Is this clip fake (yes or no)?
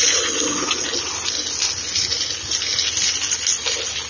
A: no